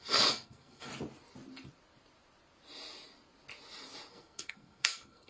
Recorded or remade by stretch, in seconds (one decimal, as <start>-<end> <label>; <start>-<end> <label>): 0.0-0.9 remade; 0.9-4.1 recorded; 4.1-5.3 remade